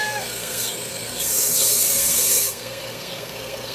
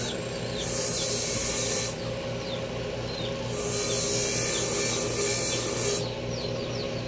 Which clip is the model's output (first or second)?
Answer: first